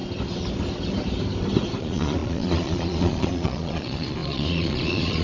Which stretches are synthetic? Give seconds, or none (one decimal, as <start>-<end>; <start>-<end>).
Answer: 1.8-5.2